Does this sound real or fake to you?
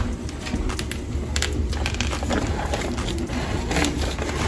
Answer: real